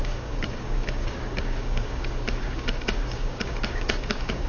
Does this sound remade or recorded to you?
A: remade